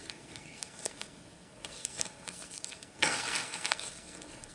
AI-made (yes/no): yes